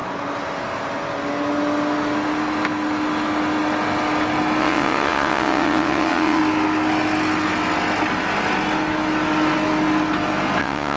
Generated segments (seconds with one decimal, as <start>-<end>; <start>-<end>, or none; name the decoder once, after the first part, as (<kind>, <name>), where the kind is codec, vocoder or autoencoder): 4.6-6.4 (vocoder, WaveNeXt); 10.6-11.0